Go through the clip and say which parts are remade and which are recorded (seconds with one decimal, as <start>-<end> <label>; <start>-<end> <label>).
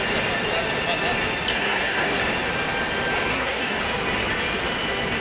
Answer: 0.0-1.5 recorded; 1.5-2.2 remade; 2.2-3.3 recorded; 3.3-3.8 remade; 3.8-5.2 recorded